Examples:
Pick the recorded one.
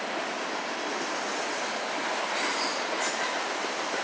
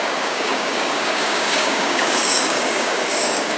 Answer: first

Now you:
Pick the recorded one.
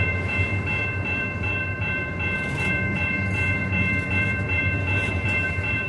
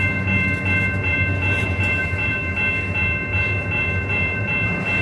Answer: second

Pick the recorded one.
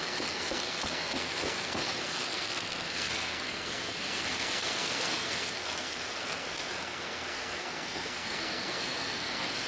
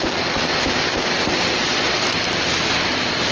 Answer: second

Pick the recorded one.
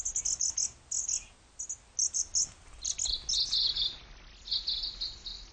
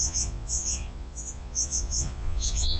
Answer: first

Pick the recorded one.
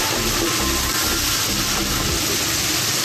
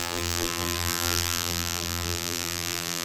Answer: first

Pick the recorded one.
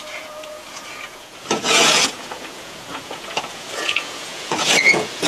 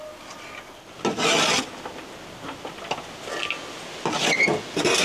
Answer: second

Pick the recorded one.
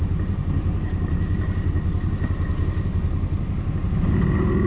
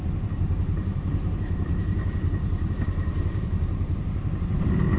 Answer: first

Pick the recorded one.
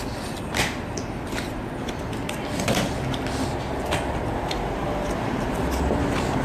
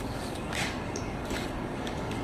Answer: first